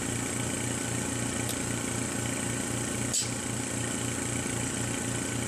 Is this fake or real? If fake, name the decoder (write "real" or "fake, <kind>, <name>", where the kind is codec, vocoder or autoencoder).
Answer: real